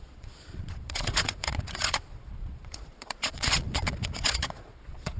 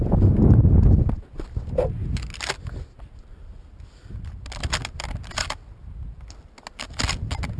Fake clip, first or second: first